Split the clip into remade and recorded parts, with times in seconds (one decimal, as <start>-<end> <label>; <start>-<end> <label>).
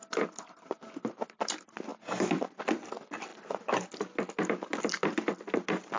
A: 0.0-6.0 recorded